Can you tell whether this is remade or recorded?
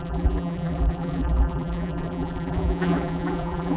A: remade